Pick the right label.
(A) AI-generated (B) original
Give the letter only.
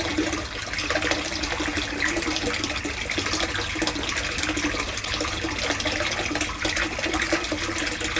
B